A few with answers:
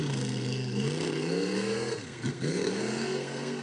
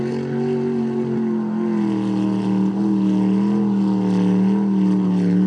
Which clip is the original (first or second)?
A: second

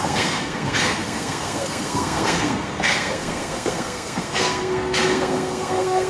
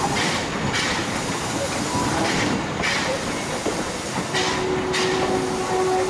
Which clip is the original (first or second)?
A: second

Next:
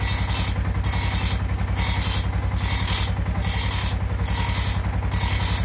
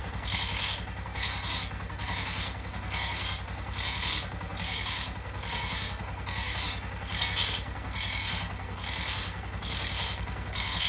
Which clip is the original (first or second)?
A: first